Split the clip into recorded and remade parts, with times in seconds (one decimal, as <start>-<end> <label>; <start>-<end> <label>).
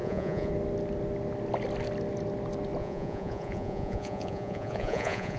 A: 0.0-0.5 remade; 0.5-2.8 recorded; 2.8-5.4 remade